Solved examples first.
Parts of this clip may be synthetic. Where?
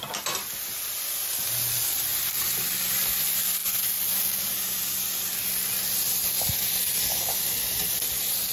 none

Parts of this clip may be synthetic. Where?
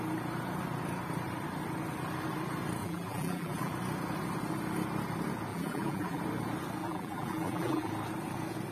2.8-3.7 (vocoder, BigVGAN v2); 5.5-6.2; 6.8-7.9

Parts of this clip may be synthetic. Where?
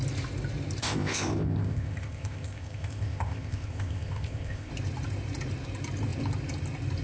0.8-4.7 (codec, ZipCodec)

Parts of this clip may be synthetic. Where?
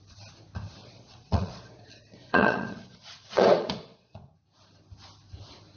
0.8-4.3 (vocoder, Vocos)